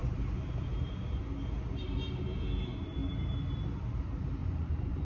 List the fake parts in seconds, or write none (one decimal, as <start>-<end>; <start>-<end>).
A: 4.4-5.0